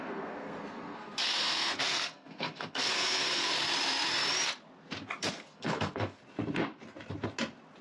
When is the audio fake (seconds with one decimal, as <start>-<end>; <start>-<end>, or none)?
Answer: 0.0-3.5; 5.2-6.2